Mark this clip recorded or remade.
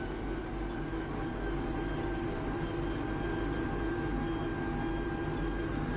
recorded